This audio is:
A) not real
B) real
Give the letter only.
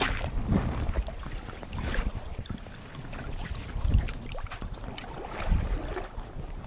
B